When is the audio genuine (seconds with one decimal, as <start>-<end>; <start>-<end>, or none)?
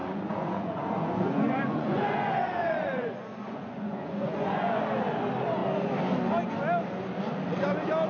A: 4.8-8.1